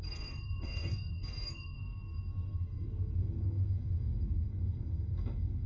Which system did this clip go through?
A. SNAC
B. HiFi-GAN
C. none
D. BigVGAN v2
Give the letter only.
A